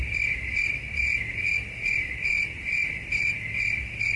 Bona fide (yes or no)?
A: yes